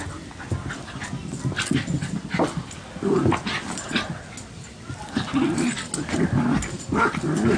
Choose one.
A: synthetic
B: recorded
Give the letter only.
B